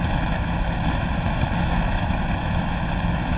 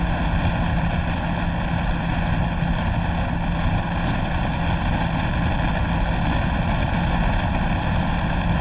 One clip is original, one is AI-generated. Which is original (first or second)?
second